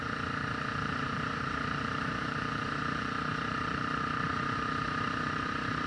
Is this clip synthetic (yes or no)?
yes